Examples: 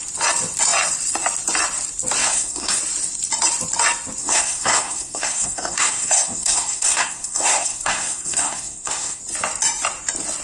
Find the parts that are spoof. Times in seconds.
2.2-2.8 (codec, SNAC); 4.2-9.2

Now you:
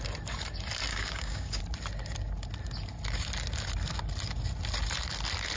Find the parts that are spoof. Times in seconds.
0.9-1.6 (codec, DAC)

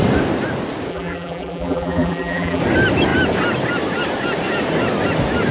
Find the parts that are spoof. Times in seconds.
0.9-2.6 (vocoder, BigVGAN v2)

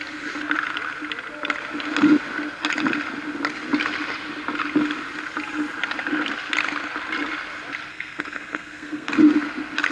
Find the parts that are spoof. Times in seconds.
7.9-9.1 (codec, SNAC)

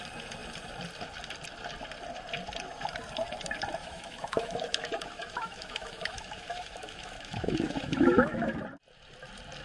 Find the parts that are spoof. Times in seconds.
3.8-8.6 (autoencoder, DAC-VAE)